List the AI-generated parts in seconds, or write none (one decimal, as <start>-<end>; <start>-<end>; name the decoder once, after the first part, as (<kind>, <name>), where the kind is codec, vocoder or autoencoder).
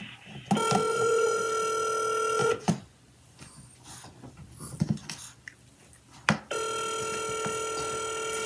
0.9-1.5 (vocoder, Vocos); 2.4-4.3